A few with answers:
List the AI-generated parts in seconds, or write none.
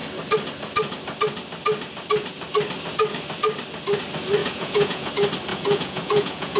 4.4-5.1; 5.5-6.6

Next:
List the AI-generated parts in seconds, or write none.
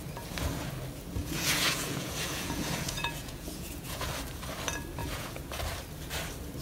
1.2-4.1; 5.0-5.6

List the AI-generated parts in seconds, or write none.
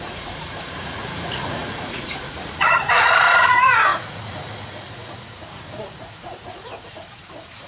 0.0-7.7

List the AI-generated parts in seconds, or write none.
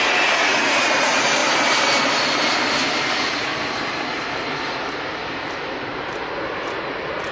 0.0-1.4; 3.1-3.5; 6.6-7.3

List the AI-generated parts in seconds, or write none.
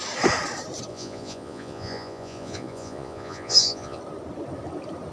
0.9-4.0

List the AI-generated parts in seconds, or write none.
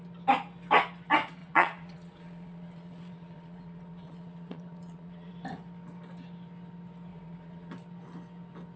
1.4-5.3; 7.1-7.7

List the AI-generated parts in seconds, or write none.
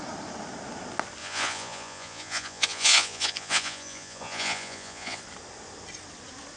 1.2-5.2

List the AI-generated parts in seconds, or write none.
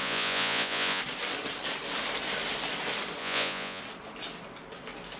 0.0-1.0; 3.2-3.8